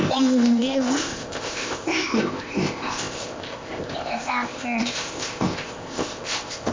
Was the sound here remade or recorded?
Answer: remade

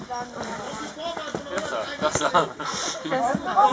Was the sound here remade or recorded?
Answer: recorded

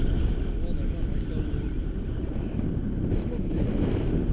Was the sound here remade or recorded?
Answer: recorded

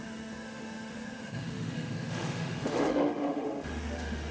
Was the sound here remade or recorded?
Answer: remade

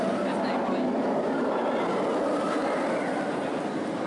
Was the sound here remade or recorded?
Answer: recorded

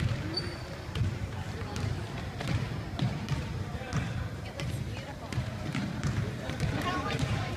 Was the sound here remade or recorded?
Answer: remade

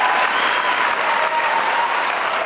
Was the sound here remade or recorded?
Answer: recorded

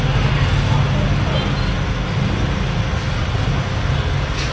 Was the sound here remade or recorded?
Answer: recorded